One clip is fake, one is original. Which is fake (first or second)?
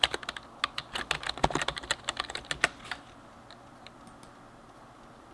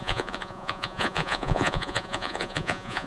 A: second